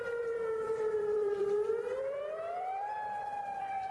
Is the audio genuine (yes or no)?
no